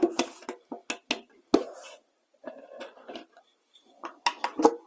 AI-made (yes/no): no